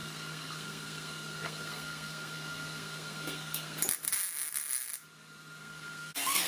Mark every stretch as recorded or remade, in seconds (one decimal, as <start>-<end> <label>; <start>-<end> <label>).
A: 0.0-3.8 remade; 3.8-5.6 recorded; 5.6-6.5 remade